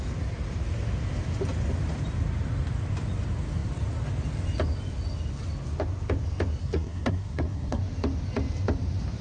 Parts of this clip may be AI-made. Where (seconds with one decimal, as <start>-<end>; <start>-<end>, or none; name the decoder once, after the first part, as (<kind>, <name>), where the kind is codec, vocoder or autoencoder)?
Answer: 6.6-7.8 (codec, SNAC)